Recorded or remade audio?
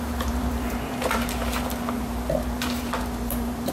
remade